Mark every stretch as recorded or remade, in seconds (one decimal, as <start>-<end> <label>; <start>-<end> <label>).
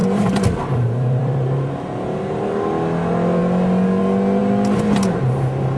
0.0-1.7 remade; 1.7-5.8 recorded